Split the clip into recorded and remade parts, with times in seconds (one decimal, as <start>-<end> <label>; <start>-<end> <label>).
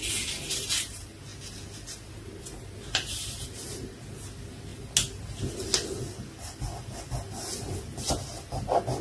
0.0-9.0 recorded